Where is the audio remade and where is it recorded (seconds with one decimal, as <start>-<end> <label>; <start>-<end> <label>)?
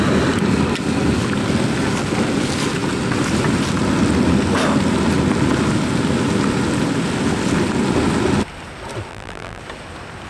0.0-9.1 recorded; 9.1-9.6 remade; 9.6-10.3 recorded